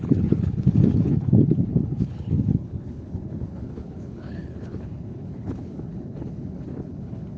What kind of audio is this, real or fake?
fake